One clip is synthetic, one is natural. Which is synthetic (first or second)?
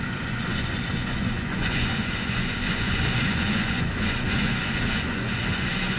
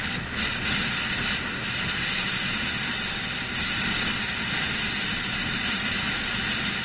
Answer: first